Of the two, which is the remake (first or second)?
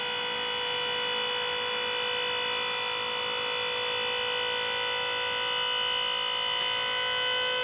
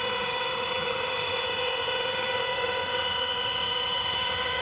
second